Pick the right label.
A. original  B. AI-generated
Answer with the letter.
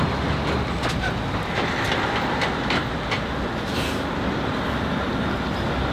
A